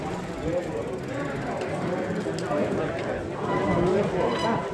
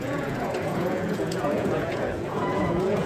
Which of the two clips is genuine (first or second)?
first